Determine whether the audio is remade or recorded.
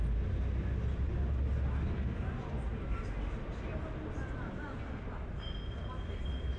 recorded